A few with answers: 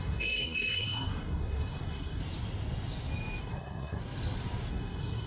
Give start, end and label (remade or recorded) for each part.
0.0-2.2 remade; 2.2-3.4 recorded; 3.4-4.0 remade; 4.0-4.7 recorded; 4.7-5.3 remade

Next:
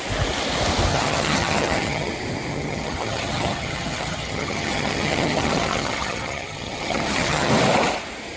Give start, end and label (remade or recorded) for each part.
0.0-0.9 recorded; 0.9-2.1 remade; 2.1-2.5 recorded; 2.5-7.5 remade; 7.5-8.4 recorded

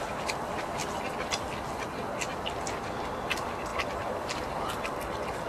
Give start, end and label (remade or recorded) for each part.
0.0-5.5 recorded

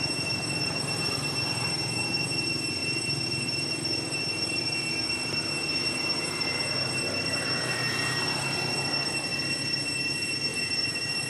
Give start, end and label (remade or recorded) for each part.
0.0-2.8 recorded; 2.8-4.6 remade; 4.6-10.5 recorded; 10.5-11.3 remade

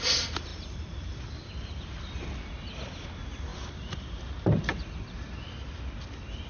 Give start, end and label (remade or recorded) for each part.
0.0-0.5 recorded; 0.5-2.0 remade; 2.0-3.5 recorded; 3.5-4.2 remade; 4.2-4.7 recorded; 4.7-5.3 remade; 5.3-6.5 recorded